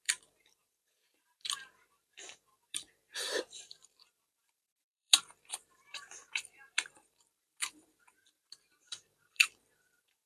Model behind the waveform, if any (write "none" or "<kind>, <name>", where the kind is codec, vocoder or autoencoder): vocoder, BigVGAN v2